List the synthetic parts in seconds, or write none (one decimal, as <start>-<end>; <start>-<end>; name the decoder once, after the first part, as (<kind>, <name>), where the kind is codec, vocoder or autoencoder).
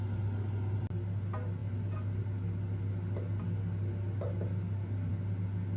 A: none